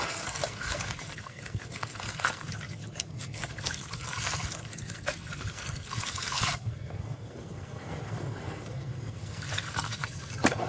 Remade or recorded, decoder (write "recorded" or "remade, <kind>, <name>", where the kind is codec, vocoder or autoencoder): remade, codec, SNAC